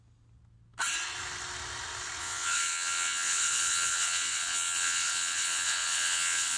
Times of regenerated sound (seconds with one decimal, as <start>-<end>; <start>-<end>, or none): 2.2-6.6